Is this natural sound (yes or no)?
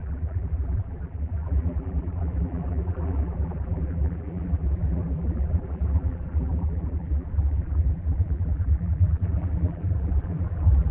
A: no